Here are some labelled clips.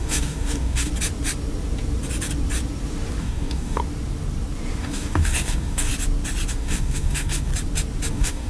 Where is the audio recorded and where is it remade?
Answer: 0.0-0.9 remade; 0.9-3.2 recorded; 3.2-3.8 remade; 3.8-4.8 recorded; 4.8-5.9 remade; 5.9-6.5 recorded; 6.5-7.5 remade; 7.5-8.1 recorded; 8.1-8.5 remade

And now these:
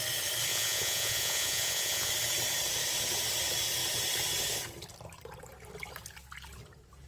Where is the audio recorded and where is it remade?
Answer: 0.0-0.5 recorded; 0.5-2.1 remade; 2.1-7.1 recorded

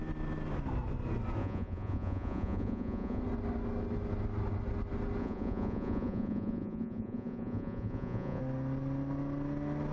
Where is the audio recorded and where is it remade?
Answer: 0.0-1.4 recorded; 1.4-3.2 remade; 3.2-5.2 recorded; 5.2-8.4 remade; 8.4-9.9 recorded

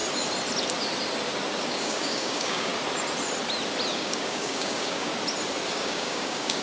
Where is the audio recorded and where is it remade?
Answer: 0.0-1.6 recorded; 1.6-2.7 remade; 2.7-3.9 recorded; 3.9-5.1 remade; 5.1-5.7 recorded; 5.7-6.6 remade

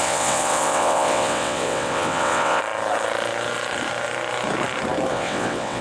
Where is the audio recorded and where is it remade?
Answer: 0.0-2.6 remade; 2.6-5.1 recorded; 5.1-5.8 remade

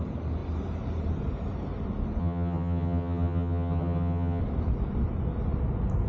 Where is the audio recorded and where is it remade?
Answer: 0.0-2.2 recorded; 2.2-4.4 remade; 4.4-6.1 recorded

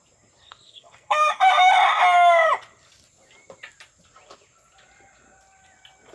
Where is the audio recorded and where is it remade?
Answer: 0.0-0.4 recorded; 0.4-1.7 remade; 1.7-6.1 recorded

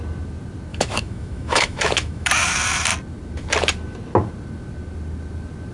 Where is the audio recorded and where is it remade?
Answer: 0.0-0.7 recorded; 0.7-2.3 remade; 2.3-5.7 recorded